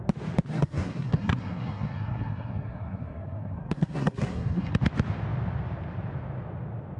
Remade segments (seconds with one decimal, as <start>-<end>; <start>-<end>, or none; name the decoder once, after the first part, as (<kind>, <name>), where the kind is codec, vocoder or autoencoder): 0.5-4.7 (codec, SNAC)